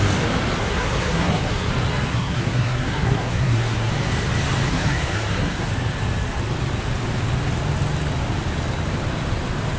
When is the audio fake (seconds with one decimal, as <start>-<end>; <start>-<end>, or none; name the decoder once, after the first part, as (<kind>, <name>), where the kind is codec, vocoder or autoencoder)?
0.6-1.7 (codec, SNAC); 2.1-3.9; 4.7-5.7